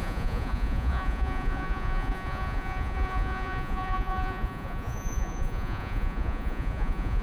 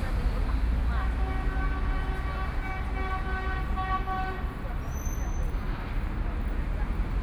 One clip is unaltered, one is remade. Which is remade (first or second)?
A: first